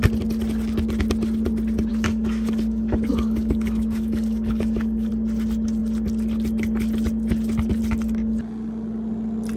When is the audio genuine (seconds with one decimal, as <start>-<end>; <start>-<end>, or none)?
0.0-1.9; 5.1-9.6